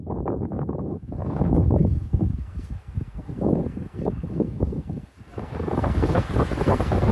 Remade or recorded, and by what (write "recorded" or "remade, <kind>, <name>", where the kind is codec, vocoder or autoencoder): remade, codec, SNAC